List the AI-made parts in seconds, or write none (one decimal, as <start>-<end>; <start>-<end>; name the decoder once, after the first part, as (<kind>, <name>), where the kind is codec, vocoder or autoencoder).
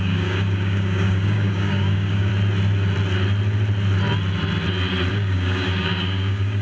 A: 0.0-2.3 (codec, DAC); 5.1-6.6